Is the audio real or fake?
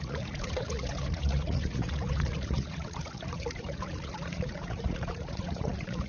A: fake